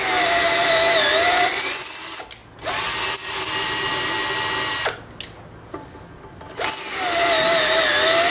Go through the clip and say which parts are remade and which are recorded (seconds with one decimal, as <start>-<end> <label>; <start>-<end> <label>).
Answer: 0.0-1.3 recorded; 1.3-1.9 remade; 1.9-8.3 recorded

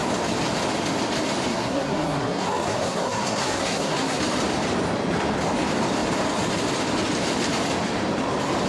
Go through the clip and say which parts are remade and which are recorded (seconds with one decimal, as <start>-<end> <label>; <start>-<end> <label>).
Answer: 0.0-1.5 recorded; 1.5-4.2 remade; 4.2-8.7 recorded

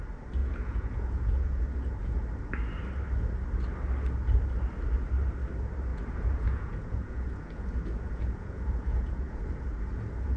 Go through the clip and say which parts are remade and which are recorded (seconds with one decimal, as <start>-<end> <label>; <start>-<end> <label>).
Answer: 0.0-0.4 recorded; 0.4-1.6 remade; 1.6-5.9 recorded; 5.9-9.5 remade; 9.5-10.4 recorded

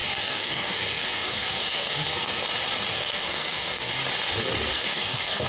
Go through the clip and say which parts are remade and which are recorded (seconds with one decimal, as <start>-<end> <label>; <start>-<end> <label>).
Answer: 0.0-2.4 remade; 2.4-2.9 recorded; 2.9-3.9 remade; 3.9-4.7 recorded; 4.7-5.5 remade